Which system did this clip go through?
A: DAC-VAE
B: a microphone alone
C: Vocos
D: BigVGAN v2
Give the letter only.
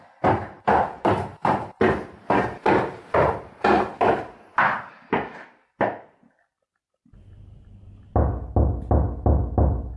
B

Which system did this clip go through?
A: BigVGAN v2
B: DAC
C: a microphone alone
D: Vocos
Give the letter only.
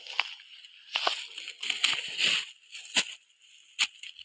C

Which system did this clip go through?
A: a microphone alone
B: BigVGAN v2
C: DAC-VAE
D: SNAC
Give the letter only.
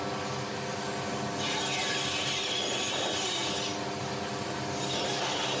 A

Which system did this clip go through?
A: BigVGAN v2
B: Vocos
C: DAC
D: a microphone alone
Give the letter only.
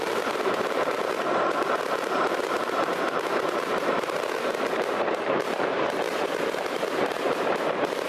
A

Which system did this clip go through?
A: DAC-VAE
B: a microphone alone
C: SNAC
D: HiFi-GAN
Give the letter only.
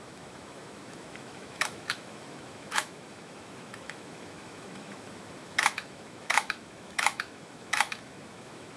A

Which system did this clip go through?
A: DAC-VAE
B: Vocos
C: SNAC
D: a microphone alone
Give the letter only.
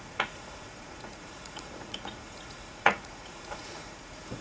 B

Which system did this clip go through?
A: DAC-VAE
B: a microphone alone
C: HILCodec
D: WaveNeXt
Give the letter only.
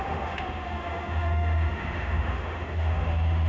A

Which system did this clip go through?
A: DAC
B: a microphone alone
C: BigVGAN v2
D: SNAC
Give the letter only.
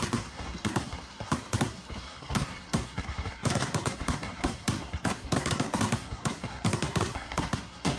D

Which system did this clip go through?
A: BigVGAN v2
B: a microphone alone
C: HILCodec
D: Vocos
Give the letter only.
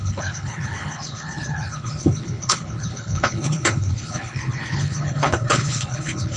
C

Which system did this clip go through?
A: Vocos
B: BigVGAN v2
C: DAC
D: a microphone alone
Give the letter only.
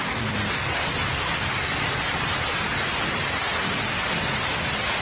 B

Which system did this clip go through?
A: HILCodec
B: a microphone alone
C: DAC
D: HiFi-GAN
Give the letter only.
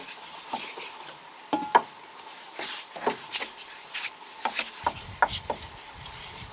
B